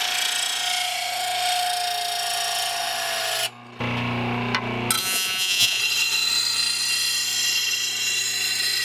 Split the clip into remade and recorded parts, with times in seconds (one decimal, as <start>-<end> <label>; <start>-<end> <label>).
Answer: 0.0-5.0 recorded; 5.0-5.8 remade; 5.8-8.8 recorded